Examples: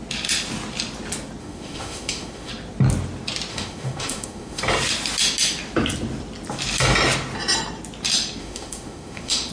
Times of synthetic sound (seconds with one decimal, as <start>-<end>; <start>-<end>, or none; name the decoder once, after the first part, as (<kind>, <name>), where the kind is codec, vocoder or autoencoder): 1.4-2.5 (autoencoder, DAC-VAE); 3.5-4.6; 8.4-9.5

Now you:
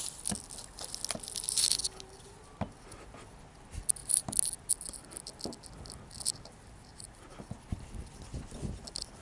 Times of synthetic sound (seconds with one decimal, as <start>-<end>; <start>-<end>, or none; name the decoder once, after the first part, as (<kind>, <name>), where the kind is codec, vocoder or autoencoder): none

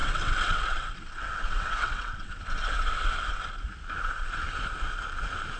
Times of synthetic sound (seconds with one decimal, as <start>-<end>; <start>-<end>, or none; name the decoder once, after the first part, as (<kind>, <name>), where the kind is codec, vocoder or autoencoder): 0.0-3.4 (vocoder, WaveNeXt)

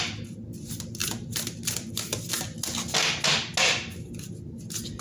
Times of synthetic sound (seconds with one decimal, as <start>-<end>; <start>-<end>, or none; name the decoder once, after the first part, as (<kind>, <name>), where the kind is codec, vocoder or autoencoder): 1.0-1.9 (vocoder, BigVGAN v2)